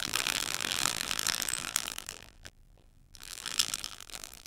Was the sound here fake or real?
fake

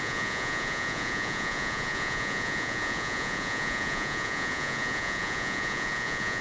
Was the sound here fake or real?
fake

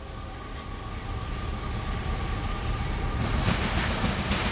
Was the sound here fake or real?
real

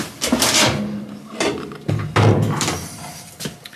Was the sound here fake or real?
real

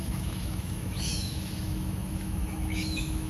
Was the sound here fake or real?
fake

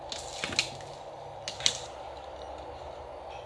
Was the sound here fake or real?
real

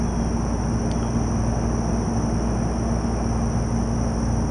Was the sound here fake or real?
real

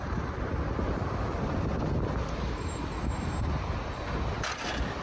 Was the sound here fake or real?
real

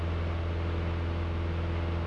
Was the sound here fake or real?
real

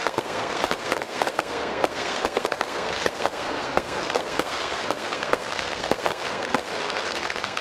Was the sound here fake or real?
fake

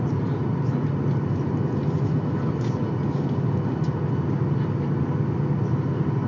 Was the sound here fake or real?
real